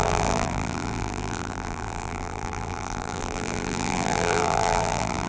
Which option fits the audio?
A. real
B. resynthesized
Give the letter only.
B